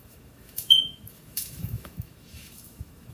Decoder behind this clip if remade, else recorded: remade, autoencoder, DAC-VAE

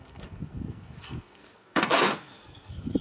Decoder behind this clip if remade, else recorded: remade, codec, SNAC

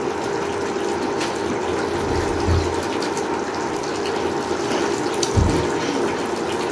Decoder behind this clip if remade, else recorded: recorded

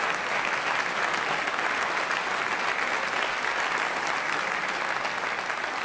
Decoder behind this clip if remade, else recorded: recorded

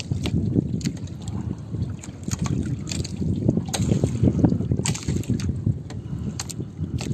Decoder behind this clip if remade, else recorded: recorded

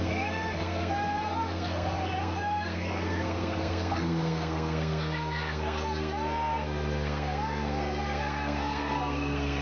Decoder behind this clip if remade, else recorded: remade, codec, SNAC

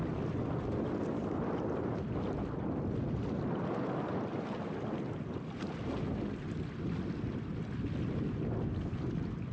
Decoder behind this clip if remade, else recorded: recorded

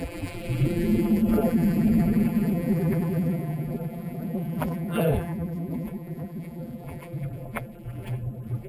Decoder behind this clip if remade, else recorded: remade, vocoder, BigVGAN v2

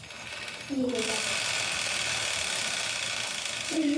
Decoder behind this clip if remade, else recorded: recorded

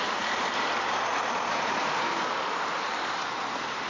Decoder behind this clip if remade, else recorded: remade, vocoder, BigVGAN v2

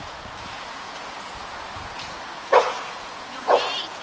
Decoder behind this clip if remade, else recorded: remade, vocoder, Vocos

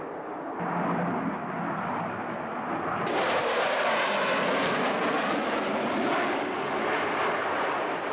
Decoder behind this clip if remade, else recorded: recorded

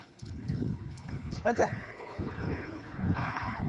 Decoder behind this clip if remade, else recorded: remade, codec, HILCodec